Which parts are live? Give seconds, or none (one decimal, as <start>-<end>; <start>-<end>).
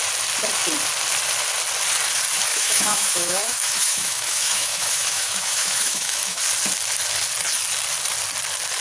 0.0-2.5; 6.4-8.8